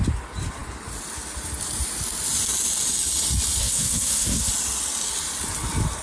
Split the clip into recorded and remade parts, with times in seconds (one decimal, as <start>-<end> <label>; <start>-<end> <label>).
0.0-3.6 recorded; 3.6-4.5 remade; 4.5-6.0 recorded

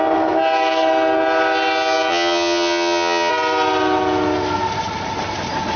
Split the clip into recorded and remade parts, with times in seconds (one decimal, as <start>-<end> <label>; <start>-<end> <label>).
0.0-2.1 recorded; 2.1-3.3 remade; 3.3-5.8 recorded

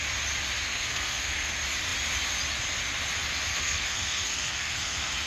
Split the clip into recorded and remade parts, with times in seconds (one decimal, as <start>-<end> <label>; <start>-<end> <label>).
0.0-0.7 recorded; 0.7-1.5 remade; 1.5-3.5 recorded; 3.5-5.3 remade

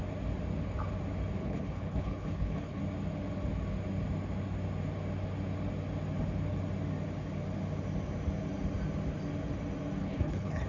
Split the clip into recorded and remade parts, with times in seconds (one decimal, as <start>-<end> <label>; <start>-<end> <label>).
0.0-1.4 recorded; 1.4-2.8 remade; 2.8-10.0 recorded; 10.0-10.7 remade